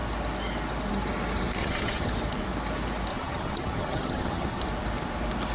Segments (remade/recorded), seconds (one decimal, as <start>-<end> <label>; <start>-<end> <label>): 0.0-1.6 recorded; 1.6-2.1 remade; 2.1-3.1 recorded; 3.1-4.6 remade; 4.6-5.5 recorded